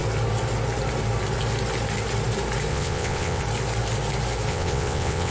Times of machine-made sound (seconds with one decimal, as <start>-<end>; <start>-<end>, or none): 2.7-3.4; 4.5-5.3